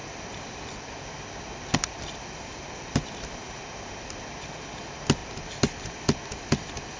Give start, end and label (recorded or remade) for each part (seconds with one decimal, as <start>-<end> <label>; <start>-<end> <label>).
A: 0.0-4.2 remade; 4.2-5.2 recorded; 5.2-5.9 remade; 5.9-7.0 recorded